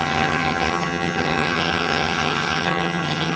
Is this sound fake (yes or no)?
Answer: yes